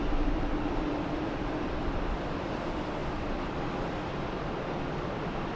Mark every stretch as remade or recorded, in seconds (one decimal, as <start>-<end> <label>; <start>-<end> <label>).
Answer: 0.0-3.0 remade; 3.0-4.8 recorded; 4.8-5.6 remade